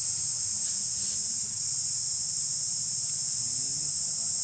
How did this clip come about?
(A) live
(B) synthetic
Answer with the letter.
A